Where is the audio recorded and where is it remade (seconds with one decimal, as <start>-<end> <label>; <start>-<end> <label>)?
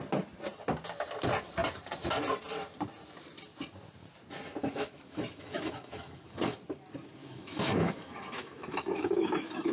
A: 0.0-4.6 recorded; 4.6-6.5 remade; 6.5-7.2 recorded; 7.2-9.7 remade